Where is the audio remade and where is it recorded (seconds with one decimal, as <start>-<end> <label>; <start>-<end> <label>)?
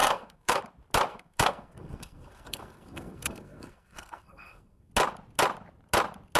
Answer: 0.0-0.6 remade; 0.6-1.1 recorded; 1.1-4.9 remade; 4.9-6.4 recorded